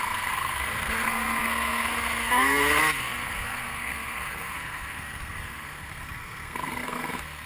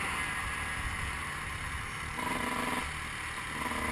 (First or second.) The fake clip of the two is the first